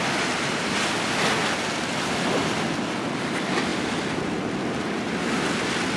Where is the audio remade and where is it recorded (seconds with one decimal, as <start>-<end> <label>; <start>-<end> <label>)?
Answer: 0.0-6.0 recorded